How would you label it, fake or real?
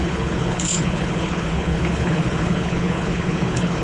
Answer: fake